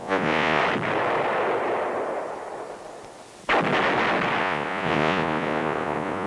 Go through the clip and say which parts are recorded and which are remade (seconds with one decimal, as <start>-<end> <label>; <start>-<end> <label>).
0.0-0.6 remade; 0.6-4.4 recorded; 4.4-6.3 remade